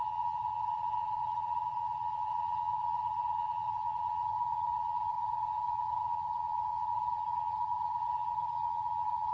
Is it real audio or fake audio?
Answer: fake